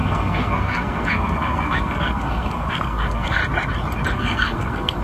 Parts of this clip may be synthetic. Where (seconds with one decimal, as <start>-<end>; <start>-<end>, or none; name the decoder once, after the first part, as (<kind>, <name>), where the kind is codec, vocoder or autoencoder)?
0.0-3.4 (codec, SNAC); 4.1-5.0